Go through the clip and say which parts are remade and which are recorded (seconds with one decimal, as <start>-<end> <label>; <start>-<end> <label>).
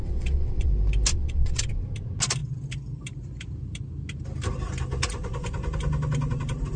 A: 0.0-0.7 remade; 0.7-1.1 recorded; 1.1-1.7 remade; 1.7-6.8 recorded